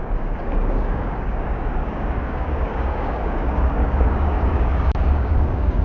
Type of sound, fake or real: fake